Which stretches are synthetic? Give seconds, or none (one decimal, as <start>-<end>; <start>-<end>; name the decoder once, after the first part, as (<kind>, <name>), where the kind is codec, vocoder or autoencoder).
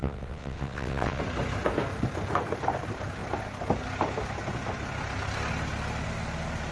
0.0-1.2 (vocoder, WaveNeXt)